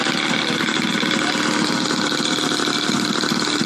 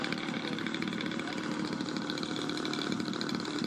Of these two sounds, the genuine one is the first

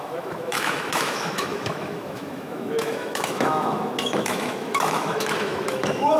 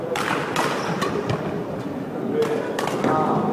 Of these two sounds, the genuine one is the second